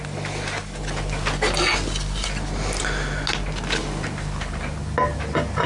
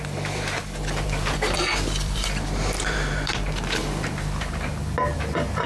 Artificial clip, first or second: second